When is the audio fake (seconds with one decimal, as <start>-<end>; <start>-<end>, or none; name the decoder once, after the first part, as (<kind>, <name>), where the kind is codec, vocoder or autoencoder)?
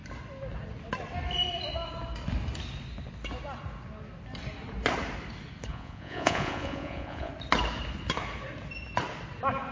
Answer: 5.7-7.3 (vocoder, Vocos)